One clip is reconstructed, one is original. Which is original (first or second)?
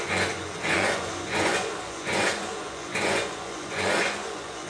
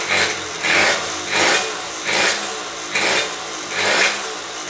second